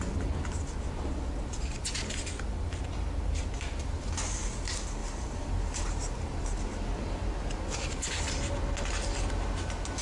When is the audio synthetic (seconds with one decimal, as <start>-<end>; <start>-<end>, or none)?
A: 5.0-6.4